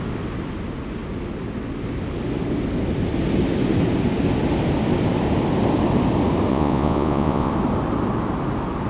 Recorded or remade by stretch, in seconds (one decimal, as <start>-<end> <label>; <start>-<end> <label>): 0.0-6.5 recorded; 6.5-7.5 remade; 7.5-8.9 recorded

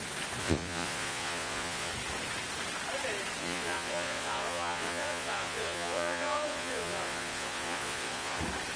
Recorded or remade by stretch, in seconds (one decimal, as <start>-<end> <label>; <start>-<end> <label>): 0.0-0.4 recorded; 0.4-1.9 remade; 1.9-3.4 recorded; 3.4-8.4 remade; 8.4-8.8 recorded

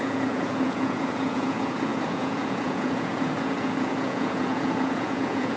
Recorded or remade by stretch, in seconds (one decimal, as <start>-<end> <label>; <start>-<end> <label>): 0.0-5.6 remade

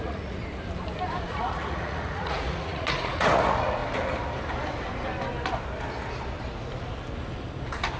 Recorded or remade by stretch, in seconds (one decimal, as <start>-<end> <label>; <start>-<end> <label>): 0.0-0.4 remade; 0.4-1.3 recorded; 1.3-3.8 remade; 3.8-8.0 recorded

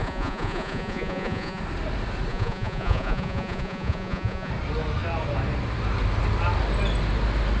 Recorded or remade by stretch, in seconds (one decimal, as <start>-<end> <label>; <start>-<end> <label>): 0.0-1.6 remade; 1.6-2.3 recorded; 2.3-4.5 remade; 4.5-7.6 recorded

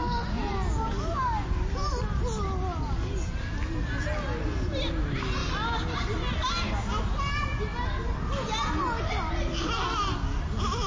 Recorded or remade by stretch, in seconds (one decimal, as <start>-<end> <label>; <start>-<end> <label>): 0.0-10.9 recorded

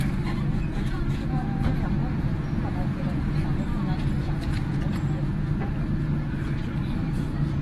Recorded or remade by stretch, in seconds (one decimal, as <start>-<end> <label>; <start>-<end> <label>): 0.0-7.6 remade